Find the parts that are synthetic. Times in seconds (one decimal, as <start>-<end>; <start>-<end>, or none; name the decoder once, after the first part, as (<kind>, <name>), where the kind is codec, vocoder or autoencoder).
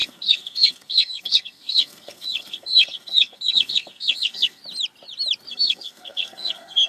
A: 0.0-4.6 (codec, SNAC); 5.5-6.9